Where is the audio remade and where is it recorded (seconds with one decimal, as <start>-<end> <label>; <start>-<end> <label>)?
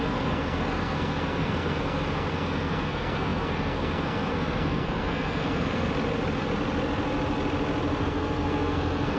0.0-5.9 remade; 5.9-8.0 recorded; 8.0-9.2 remade